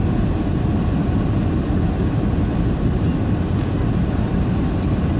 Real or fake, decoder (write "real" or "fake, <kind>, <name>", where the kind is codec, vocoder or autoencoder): real